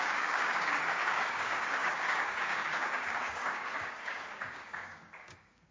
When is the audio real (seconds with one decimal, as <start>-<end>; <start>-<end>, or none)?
none

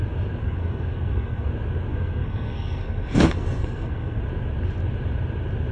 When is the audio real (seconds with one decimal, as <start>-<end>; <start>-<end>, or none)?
0.0-0.4; 1.5-1.9; 4.2-5.7

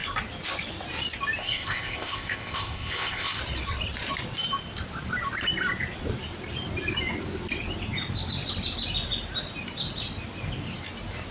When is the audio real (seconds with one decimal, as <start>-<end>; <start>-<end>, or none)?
0.0-1.4; 3.4-11.3

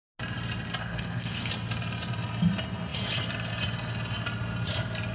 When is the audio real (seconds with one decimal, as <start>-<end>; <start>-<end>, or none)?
0.0-0.8; 1.5-5.1

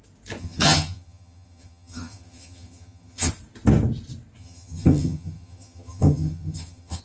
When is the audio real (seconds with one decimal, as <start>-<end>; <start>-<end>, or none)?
0.0-0.4; 3.3-4.4

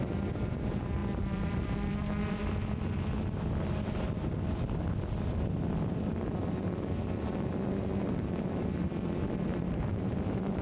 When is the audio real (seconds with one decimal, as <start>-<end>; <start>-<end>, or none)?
none

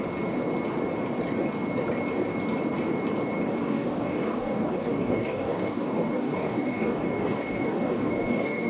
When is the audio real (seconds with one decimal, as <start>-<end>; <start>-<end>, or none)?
0.0-3.5